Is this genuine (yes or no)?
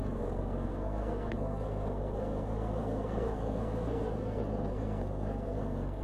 no